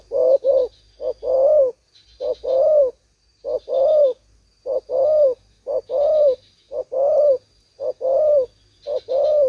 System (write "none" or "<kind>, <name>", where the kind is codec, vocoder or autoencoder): none